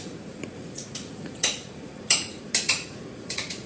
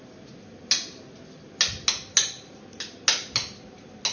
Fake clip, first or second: first